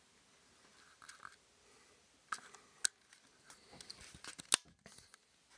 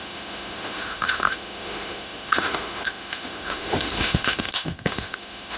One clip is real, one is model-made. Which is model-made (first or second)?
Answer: second